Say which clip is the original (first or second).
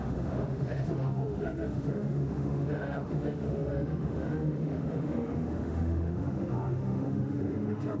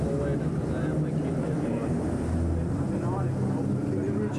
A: second